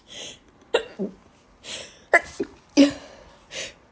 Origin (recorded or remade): recorded